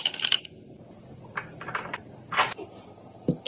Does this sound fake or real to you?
real